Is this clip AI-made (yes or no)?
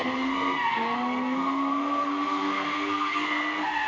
yes